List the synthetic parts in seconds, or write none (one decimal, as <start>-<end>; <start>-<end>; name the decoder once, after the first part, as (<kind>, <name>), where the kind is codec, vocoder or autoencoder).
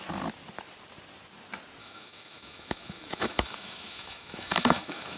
1.8-5.2 (autoencoder, DAC-VAE)